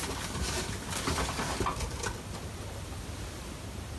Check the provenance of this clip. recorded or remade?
recorded